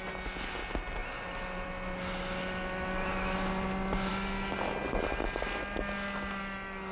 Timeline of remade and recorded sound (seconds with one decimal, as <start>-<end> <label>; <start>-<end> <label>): 0.0-1.0 recorded; 1.0-4.1 remade; 4.1-6.9 recorded